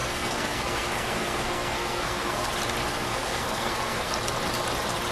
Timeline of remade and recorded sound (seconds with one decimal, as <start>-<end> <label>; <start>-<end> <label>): 0.0-2.5 remade; 2.5-2.9 recorded; 2.9-4.1 remade; 4.1-5.1 recorded